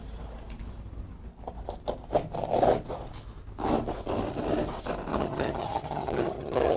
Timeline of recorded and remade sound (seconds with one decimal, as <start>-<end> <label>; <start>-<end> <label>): 0.0-5.1 recorded; 5.1-6.8 remade